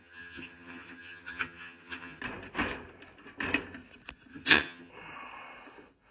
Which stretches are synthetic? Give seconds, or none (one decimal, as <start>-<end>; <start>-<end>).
0.0-2.2; 4.3-4.9